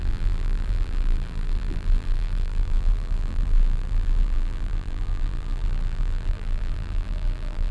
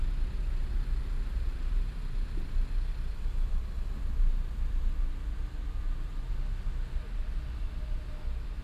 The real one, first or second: second